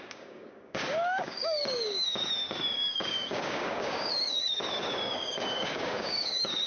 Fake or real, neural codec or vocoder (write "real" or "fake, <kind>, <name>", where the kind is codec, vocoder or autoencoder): fake, codec, DAC